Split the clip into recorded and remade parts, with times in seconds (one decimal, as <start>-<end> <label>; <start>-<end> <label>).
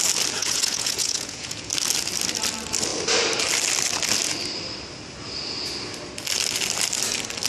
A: 0.0-0.4 recorded; 0.4-1.7 remade; 1.7-7.5 recorded